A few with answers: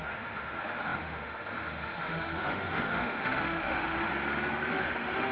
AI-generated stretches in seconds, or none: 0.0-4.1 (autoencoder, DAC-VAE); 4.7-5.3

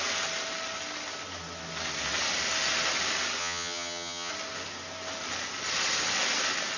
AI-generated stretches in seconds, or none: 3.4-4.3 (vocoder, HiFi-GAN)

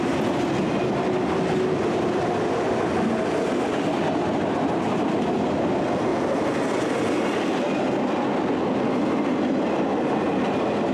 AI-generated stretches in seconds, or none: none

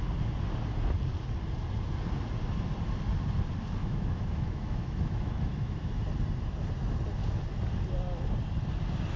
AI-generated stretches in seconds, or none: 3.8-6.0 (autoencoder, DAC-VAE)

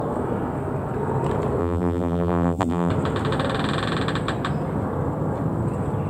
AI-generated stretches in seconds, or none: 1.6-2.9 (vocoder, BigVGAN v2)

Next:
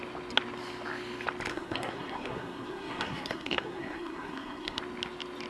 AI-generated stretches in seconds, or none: 1.5-4.8 (codec, SNAC)

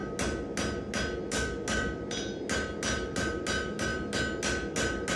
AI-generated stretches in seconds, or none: none